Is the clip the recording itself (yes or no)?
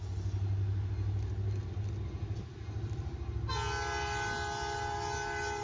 yes